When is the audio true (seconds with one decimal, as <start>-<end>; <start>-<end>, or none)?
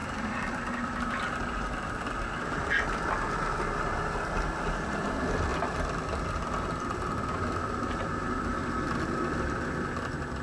0.0-10.4